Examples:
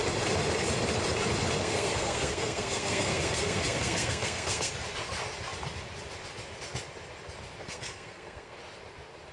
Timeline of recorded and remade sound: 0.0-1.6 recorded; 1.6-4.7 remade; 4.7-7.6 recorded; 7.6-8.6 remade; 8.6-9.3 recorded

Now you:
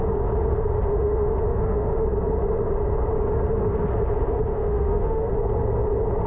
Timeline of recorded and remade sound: 0.0-0.9 recorded; 0.9-1.9 remade; 1.9-4.5 recorded; 4.5-5.3 remade; 5.3-6.3 recorded

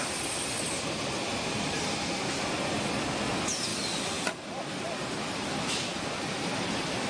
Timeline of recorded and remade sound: 0.0-7.1 recorded

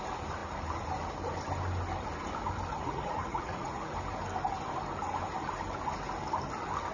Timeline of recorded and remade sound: 0.0-2.8 recorded; 2.8-3.9 remade; 3.9-6.9 recorded